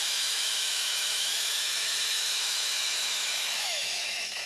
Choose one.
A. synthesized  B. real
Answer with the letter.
A